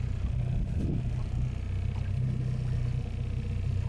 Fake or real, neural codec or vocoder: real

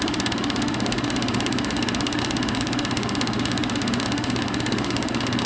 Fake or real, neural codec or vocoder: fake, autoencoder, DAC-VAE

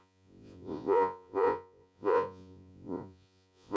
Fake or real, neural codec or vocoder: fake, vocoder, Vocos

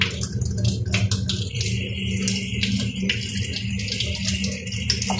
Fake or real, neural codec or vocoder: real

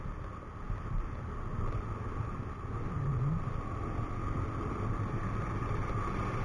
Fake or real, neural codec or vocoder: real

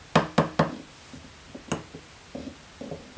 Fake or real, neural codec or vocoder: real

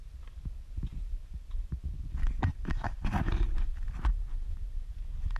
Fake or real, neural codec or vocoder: fake, vocoder, BigVGAN v2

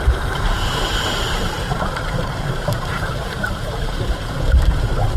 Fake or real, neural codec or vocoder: fake, vocoder, BigVGAN v2